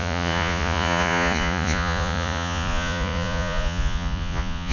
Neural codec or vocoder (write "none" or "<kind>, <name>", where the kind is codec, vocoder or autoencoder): vocoder, Vocos